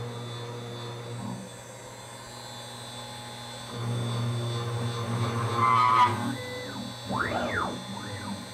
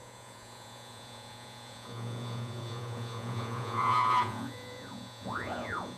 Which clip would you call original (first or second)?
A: first